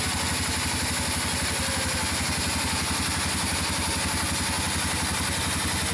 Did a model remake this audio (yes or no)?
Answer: no